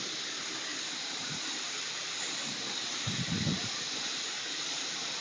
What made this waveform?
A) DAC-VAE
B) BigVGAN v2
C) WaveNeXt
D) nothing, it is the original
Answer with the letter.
D